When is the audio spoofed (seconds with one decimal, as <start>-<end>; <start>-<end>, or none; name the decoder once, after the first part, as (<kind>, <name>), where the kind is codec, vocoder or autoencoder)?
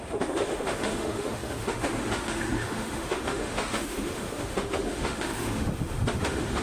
0.0-6.6 (autoencoder, DAC-VAE)